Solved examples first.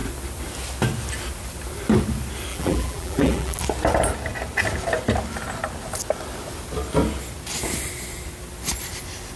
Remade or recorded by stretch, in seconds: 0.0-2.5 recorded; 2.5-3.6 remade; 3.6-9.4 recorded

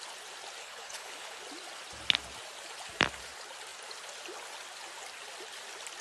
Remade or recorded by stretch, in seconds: 0.0-0.6 recorded; 0.6-1.4 remade; 1.4-6.0 recorded

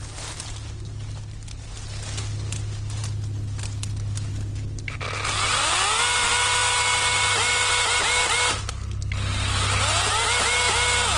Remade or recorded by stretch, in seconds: 0.0-11.2 recorded

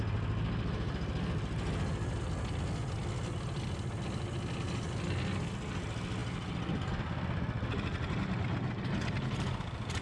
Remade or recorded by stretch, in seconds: 0.0-10.0 recorded

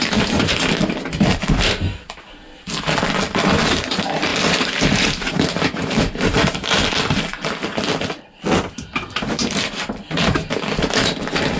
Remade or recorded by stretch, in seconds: 0.0-4.3 recorded; 4.3-6.8 remade; 6.8-11.6 recorded

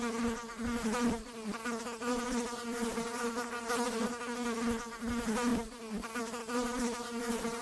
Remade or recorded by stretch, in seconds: 0.0-7.6 recorded

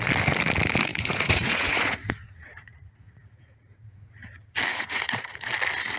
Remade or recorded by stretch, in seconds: 0.0-0.9 recorded; 0.9-4.1 remade; 4.1-4.7 recorded; 4.7-5.5 remade; 5.5-6.0 recorded

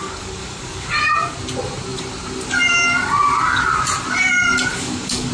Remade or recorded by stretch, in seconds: 0.0-0.9 remade; 0.9-4.7 recorded; 4.7-5.3 remade